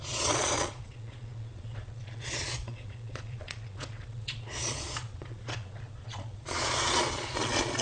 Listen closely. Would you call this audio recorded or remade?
remade